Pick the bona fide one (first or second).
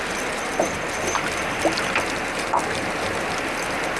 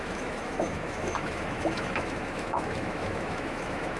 first